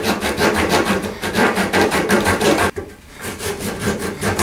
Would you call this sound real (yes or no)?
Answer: no